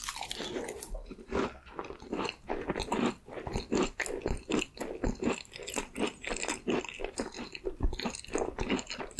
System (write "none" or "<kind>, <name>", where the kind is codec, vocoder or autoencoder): none